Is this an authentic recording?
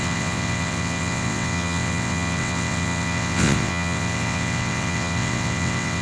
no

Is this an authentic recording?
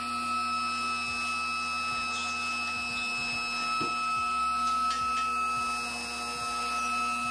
yes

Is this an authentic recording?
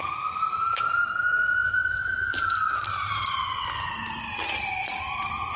yes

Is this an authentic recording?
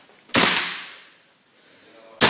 yes